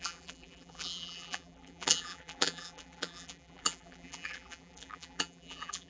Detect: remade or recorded remade